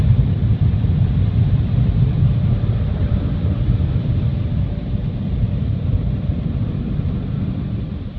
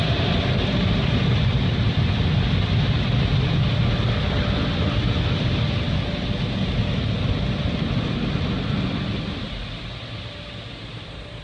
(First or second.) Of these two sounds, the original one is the second